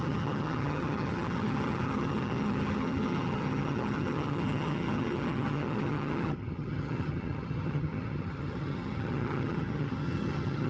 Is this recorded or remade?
remade